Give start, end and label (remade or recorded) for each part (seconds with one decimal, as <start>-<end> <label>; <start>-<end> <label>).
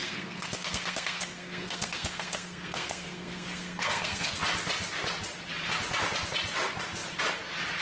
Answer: 0.0-4.4 remade; 4.4-7.8 recorded